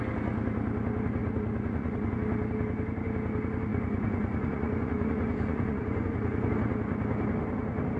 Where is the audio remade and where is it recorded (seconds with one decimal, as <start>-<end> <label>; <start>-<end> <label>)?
0.0-1.2 recorded; 1.2-2.1 remade; 2.1-3.7 recorded; 3.7-6.5 remade; 6.5-8.0 recorded